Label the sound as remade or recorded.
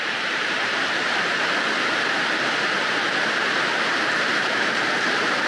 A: remade